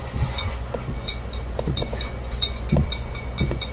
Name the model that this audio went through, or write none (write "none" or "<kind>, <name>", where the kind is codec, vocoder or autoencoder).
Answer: vocoder, Vocos